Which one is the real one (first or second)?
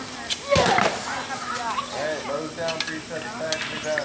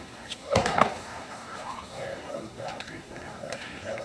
first